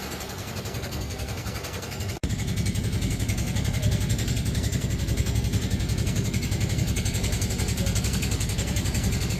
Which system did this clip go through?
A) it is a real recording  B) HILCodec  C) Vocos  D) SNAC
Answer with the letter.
D